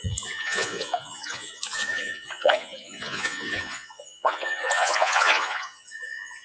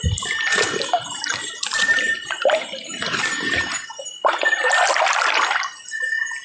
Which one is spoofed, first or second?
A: first